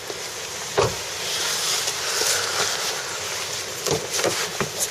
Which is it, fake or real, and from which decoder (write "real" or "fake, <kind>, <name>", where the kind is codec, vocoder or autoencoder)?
real